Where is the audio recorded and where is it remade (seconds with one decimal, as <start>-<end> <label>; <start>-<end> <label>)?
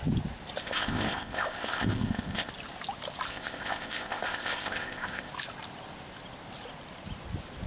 0.0-0.6 recorded; 0.6-2.5 remade; 2.5-3.3 recorded; 3.3-5.3 remade; 5.3-7.7 recorded